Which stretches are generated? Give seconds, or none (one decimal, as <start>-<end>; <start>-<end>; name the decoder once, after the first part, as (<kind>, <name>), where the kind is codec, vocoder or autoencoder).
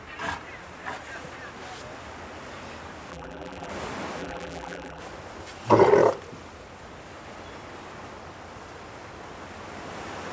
3.1-3.7 (vocoder, BigVGAN v2); 4.2-5.0